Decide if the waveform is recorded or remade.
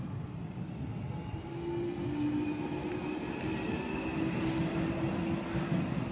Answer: recorded